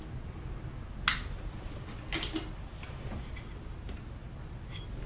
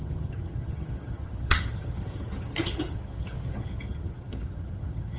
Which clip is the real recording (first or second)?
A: first